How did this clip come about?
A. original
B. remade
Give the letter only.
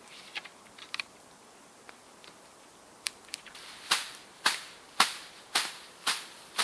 B